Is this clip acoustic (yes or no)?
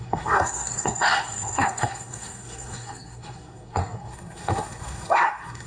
no